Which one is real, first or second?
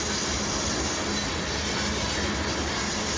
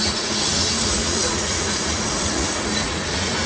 first